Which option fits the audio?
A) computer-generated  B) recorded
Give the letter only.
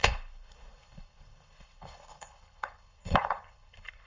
A